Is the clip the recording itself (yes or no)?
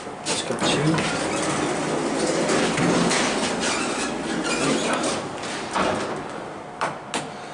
yes